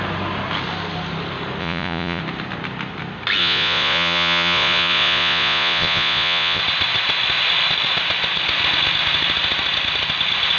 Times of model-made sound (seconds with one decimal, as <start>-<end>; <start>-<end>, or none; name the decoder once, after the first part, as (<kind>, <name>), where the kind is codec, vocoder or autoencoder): 1.6-2.2 (vocoder, Vocos); 3.4-6.6